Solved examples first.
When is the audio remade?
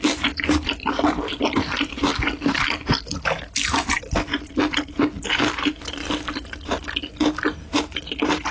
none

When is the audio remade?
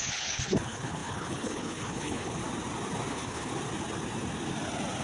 0.0-2.4 (codec, HILCodec); 3.1-3.5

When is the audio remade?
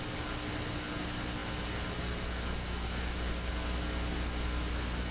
none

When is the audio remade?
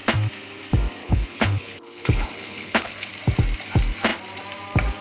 1.0-3.1 (codec, HILCodec)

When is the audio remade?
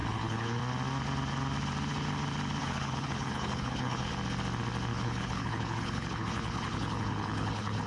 0.0-0.6 (codec, HILCodec); 2.6-4.1; 4.9-7.9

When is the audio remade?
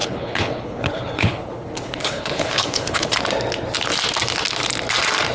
0.0-3.2 (codec, HILCodec)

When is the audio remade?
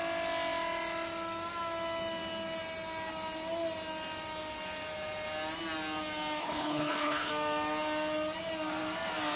6.4-7.3 (codec, HILCodec)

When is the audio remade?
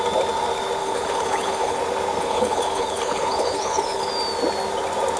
0.8-1.8 (codec, HILCodec); 2.2-4.1